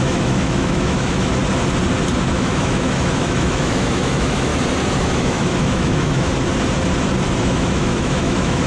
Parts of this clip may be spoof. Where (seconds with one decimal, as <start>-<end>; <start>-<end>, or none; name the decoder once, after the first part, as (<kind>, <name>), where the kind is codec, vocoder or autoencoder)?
0.0-1.4 (autoencoder, DAC-VAE); 2.3-4.5; 5.0-6.3; 7.4-8.7